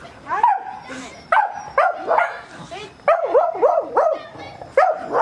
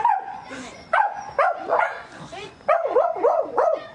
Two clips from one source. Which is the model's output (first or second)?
second